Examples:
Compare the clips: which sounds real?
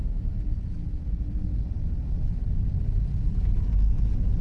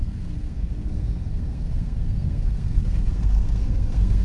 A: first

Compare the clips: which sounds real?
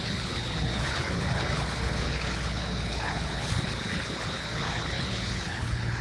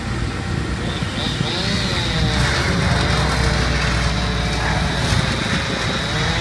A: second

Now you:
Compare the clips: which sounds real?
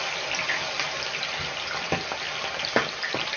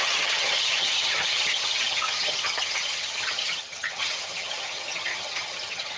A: first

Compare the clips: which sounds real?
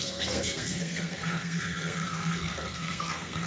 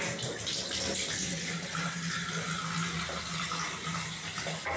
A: second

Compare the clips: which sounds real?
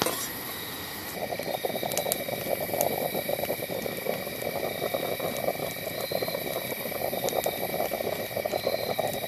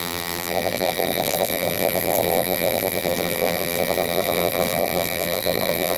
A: first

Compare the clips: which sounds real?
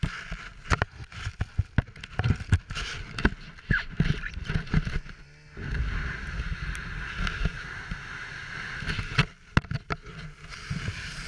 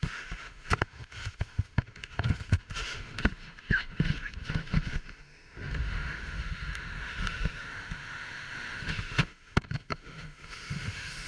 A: first